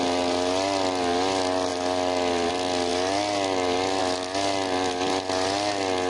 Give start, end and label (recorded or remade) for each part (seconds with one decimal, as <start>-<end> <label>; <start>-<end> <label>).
0.0-6.1 recorded